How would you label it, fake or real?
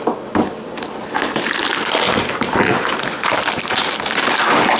real